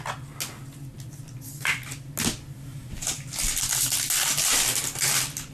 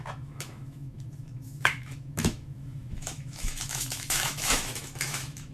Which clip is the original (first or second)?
first